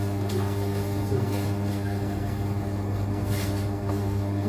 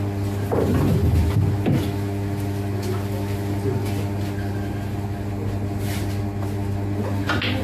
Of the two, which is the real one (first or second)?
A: second